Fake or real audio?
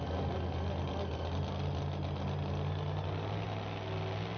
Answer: real